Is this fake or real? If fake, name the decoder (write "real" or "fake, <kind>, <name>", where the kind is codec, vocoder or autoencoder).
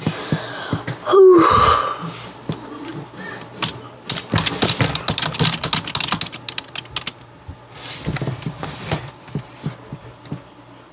real